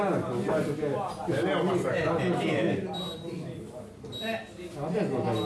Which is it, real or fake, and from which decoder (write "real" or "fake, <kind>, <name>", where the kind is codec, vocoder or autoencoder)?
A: real